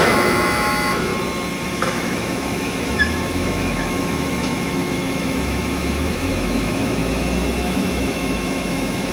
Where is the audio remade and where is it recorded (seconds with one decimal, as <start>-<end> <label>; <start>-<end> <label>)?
0.0-1.1 remade; 1.1-1.7 recorded; 1.7-7.0 remade; 7.0-7.6 recorded; 7.6-9.1 remade